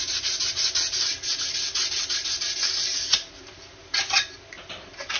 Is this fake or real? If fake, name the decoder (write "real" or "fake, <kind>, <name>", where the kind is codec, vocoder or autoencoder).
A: real